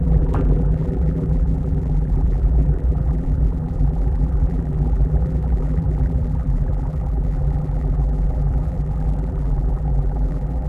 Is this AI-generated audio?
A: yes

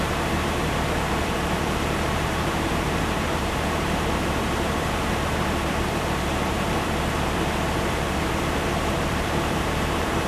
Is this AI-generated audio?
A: yes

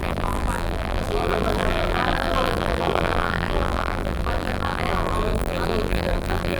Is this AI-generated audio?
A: yes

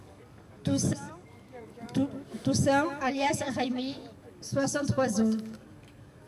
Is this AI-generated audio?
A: yes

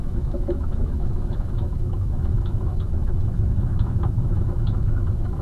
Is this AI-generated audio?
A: yes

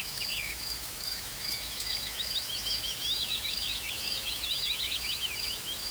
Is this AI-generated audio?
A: yes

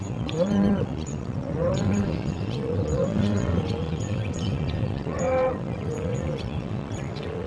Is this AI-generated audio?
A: yes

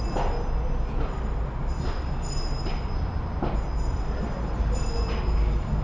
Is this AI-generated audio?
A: no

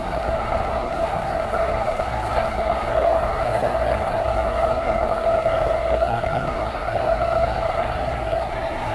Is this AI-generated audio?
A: yes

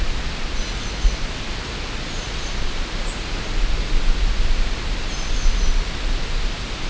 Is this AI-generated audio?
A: no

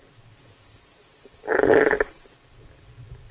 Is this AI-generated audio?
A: no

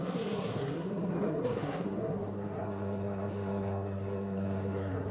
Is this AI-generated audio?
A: yes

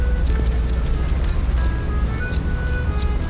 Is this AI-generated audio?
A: no